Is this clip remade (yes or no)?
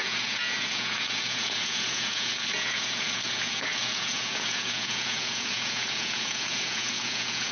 yes